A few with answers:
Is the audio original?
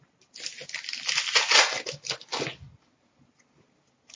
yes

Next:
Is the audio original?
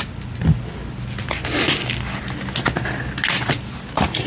yes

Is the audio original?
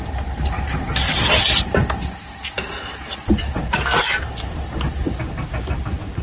yes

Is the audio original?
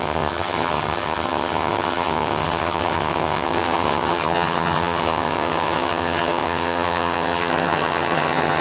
no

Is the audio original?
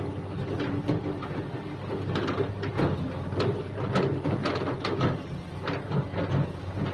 yes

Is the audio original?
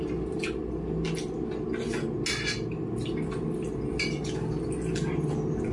yes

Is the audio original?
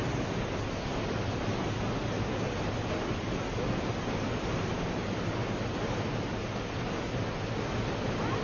yes